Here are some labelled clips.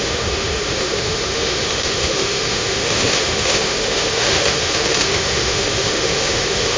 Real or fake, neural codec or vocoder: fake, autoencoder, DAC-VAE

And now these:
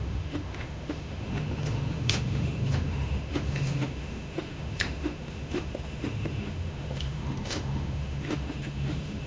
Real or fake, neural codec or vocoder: fake, autoencoder, DAC-VAE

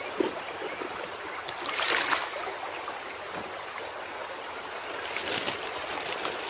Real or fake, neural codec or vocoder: real